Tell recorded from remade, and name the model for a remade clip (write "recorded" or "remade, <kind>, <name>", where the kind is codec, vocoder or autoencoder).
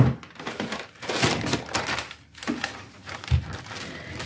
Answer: recorded